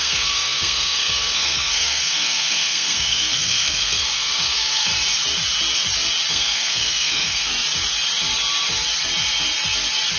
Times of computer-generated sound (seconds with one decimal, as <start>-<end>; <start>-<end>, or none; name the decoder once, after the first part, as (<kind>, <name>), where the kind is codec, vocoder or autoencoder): 0.0-4.9 (codec, SNAC); 6.3-7.5